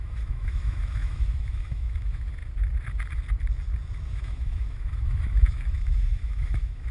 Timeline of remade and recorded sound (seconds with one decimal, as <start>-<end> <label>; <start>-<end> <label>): 0.0-2.4 remade; 2.4-4.1 recorded; 4.1-6.9 remade